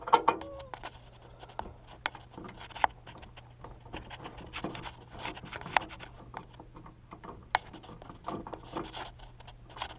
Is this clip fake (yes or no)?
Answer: no